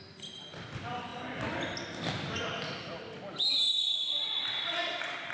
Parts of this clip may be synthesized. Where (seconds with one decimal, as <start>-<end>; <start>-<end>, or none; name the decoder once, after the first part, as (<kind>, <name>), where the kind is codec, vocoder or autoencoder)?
none